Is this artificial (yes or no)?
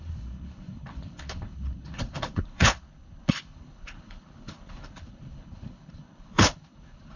yes